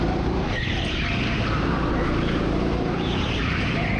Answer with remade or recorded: remade